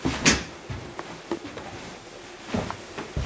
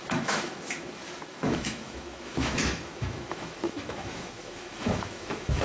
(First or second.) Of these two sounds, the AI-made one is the second